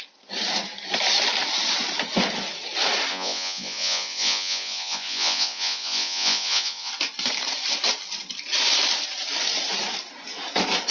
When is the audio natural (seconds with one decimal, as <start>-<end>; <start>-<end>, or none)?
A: 0.0-3.1; 6.9-10.9